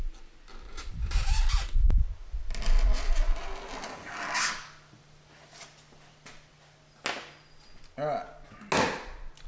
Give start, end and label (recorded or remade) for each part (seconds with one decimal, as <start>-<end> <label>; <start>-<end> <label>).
0.0-9.5 recorded